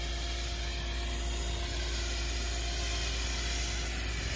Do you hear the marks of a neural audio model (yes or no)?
no